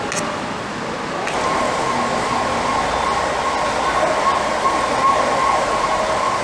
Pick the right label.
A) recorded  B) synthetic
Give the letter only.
A